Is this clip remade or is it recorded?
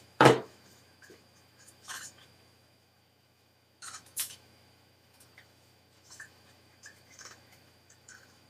remade